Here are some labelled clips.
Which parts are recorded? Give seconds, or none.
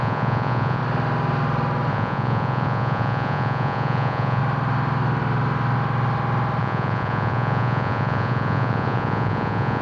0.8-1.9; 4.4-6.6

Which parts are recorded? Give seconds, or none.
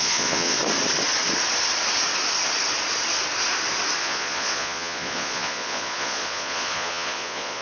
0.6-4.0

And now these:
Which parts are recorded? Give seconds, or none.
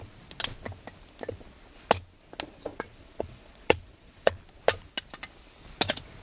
0.0-2.7; 4.4-6.2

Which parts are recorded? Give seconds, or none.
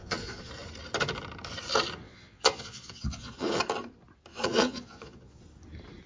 0.5-2.0; 3.6-4.3; 5.4-6.1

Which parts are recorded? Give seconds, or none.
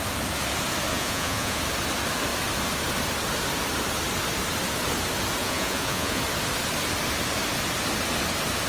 0.0-0.9; 1.6-5.4; 6.2-8.7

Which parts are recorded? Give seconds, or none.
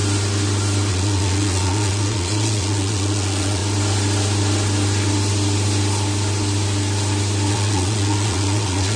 0.0-0.9; 3.6-7.5